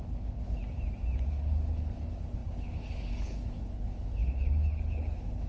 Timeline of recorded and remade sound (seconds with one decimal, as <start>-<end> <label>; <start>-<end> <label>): 0.0-0.6 remade; 0.6-1.3 recorded; 1.3-5.5 remade